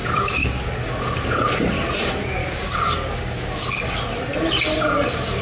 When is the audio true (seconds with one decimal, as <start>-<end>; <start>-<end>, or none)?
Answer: 1.5-2.4; 4.0-4.7